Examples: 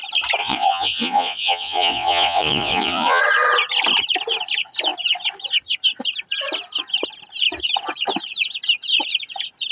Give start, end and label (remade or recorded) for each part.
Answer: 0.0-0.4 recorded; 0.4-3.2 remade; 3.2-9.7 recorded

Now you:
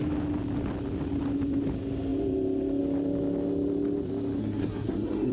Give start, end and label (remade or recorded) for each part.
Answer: 0.0-4.4 recorded; 4.4-5.3 remade

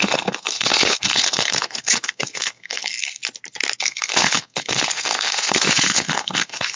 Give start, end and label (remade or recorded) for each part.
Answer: 0.0-3.2 remade; 3.2-3.8 recorded; 3.8-6.8 remade

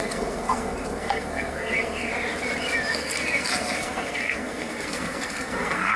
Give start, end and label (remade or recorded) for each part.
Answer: 0.0-2.1 remade; 2.1-2.9 recorded; 2.9-6.0 remade

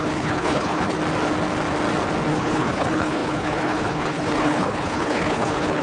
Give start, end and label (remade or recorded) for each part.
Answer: 0.0-1.0 remade; 1.0-2.3 recorded; 2.3-5.8 remade

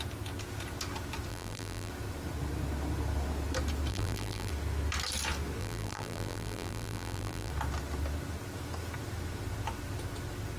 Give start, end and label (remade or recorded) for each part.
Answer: 0.0-1.3 recorded; 1.3-1.9 remade; 1.9-3.9 recorded; 3.9-4.5 remade; 4.5-5.6 recorded; 5.6-7.5 remade; 7.5-10.6 recorded